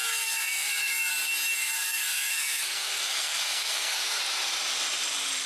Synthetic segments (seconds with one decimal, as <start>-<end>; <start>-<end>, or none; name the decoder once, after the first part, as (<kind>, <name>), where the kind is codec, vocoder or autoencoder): 0.0-1.1 (codec, SNAC); 1.6-4.2